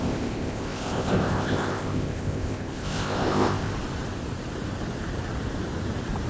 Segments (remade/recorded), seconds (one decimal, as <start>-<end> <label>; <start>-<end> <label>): 0.0-3.7 remade; 3.7-6.3 recorded